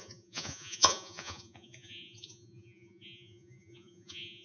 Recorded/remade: remade